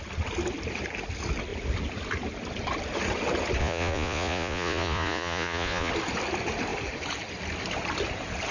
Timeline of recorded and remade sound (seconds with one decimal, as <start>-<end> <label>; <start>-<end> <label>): 0.0-3.6 recorded; 3.6-5.9 remade; 5.9-8.5 recorded